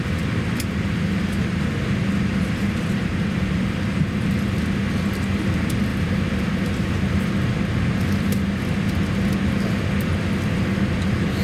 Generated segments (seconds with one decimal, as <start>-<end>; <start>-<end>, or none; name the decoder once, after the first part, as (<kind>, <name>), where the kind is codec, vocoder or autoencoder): 2.3-3.6 (vocoder, BigVGAN v2); 5.9-7.2